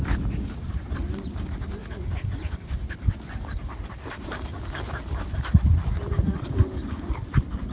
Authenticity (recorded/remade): recorded